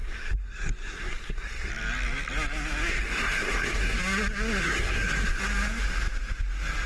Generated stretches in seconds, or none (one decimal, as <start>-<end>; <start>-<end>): 0.0-1.7; 2.9-4.0; 4.6-5.4